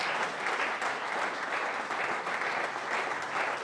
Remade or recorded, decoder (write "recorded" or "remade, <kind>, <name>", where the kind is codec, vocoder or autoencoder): recorded